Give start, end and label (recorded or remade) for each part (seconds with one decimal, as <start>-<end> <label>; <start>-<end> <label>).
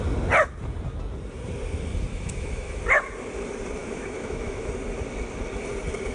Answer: 0.0-2.1 recorded; 2.1-2.8 remade; 2.8-3.8 recorded; 3.8-4.7 remade; 4.7-6.1 recorded